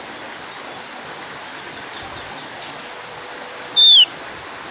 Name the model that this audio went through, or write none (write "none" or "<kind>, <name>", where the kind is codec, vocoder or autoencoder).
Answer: none